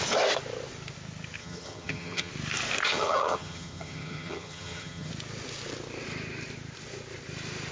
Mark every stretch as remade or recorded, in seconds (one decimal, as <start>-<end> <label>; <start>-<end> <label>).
0.0-1.4 recorded; 1.4-2.3 remade; 2.3-2.8 recorded; 2.8-5.1 remade; 5.1-7.7 recorded

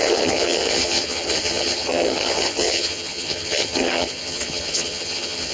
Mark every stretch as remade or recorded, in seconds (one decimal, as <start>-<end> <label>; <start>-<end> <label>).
0.0-5.5 remade